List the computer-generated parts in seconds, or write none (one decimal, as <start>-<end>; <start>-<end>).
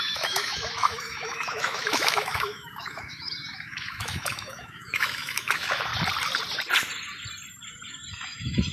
0.0-5.9; 8.1-8.7